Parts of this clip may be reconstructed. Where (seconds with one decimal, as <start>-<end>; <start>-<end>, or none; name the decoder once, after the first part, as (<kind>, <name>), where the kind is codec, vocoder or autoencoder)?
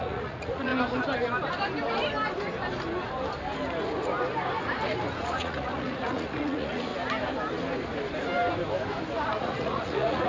0.0-0.7 (vocoder, Vocos); 5.2-6.9; 9.4-10.3